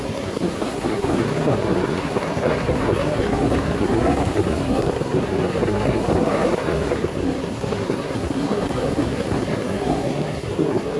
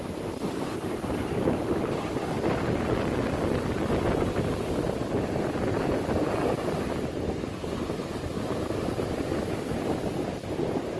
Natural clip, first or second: second